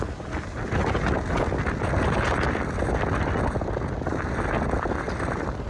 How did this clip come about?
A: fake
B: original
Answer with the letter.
B